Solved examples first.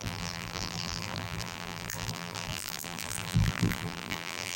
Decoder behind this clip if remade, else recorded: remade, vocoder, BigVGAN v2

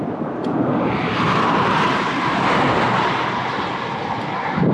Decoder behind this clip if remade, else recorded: recorded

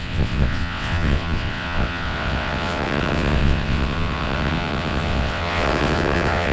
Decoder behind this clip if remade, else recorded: remade, vocoder, WaveNeXt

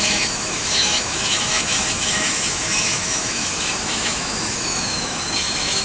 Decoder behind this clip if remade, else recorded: remade, autoencoder, DAC-VAE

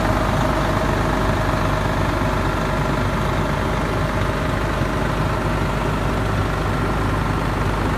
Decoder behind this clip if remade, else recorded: recorded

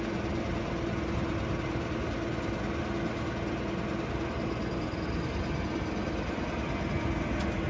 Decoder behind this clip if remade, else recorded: recorded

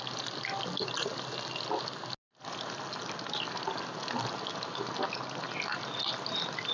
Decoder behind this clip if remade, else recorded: recorded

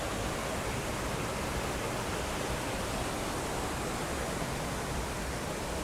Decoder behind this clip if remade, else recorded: recorded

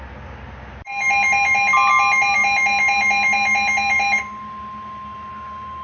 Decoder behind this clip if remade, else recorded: recorded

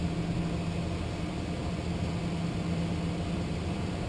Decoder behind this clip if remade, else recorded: recorded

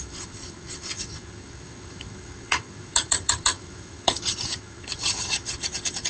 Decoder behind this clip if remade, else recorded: remade, vocoder, HiFi-GAN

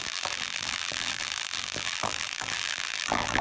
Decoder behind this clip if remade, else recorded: remade, vocoder, BigVGAN v2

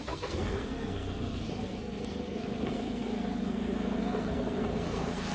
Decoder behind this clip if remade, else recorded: remade, codec, SNAC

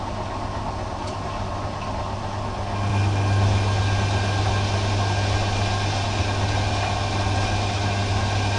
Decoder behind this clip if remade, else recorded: recorded